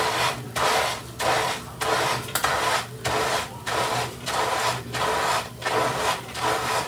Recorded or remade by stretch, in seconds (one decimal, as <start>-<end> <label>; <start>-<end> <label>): 0.0-6.9 recorded